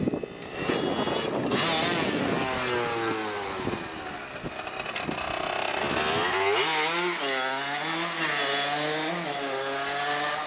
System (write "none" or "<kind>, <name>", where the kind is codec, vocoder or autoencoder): none